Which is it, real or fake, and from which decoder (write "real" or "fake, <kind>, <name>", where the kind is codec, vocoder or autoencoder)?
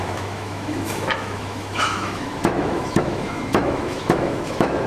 fake, autoencoder, DAC-VAE